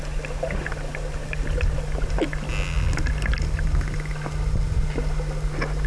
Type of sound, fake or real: real